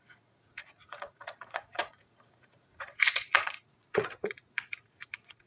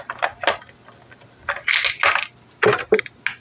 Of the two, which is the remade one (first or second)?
first